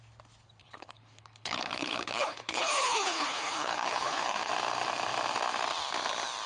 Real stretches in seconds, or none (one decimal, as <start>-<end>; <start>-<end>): 0.0-0.6; 4.5-6.5